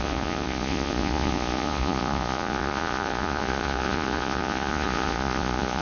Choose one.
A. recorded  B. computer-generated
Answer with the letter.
B